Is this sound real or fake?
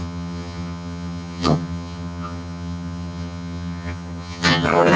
fake